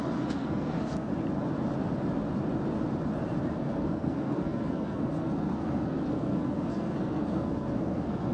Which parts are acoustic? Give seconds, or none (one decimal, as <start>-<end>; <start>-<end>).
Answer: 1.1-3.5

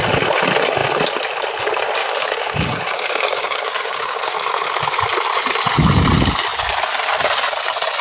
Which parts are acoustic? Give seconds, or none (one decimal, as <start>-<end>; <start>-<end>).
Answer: 0.0-2.0; 4.2-8.0

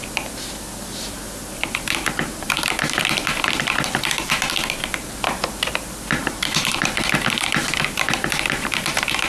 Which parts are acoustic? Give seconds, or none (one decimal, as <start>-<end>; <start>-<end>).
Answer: 0.0-0.9; 4.5-6.2; 8.7-9.3

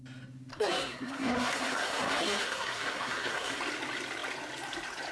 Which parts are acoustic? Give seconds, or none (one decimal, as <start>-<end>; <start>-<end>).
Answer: 0.0-0.5; 3.6-5.1

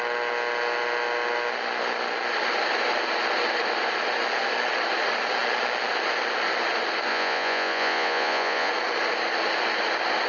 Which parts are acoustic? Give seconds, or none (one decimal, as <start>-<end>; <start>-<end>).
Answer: 0.0-7.1; 8.7-10.3